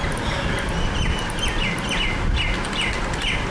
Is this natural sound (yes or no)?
yes